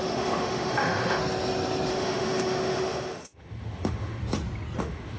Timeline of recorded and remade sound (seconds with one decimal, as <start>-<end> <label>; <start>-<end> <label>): 0.0-1.2 remade; 1.2-1.9 recorded; 1.9-4.2 remade; 4.2-4.8 recorded; 4.8-5.2 remade